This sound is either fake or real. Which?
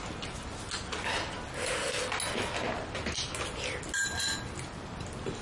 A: real